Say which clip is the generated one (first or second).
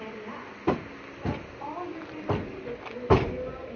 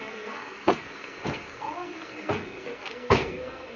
second